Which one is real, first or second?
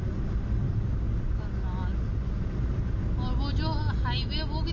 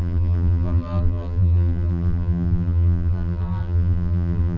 first